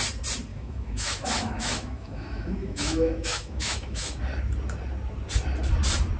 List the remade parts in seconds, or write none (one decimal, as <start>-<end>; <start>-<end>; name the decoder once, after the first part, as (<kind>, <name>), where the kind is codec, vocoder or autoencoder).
0.5-4.2 (autoencoder, DAC-VAE)